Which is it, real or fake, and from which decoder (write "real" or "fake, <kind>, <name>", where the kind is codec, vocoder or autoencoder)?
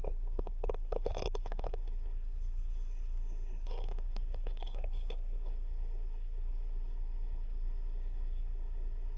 fake, codec, SNAC